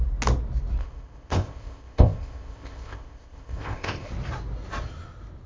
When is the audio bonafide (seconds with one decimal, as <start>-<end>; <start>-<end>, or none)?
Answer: 0.0-0.8; 4.1-5.5